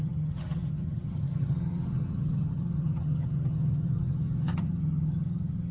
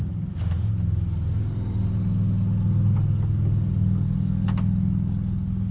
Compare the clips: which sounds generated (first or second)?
first